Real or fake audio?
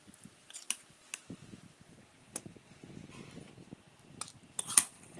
real